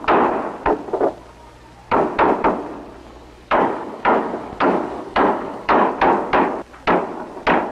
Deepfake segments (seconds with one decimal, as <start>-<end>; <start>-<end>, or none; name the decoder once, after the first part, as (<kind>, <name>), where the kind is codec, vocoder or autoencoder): 3.0-5.9 (codec, DAC)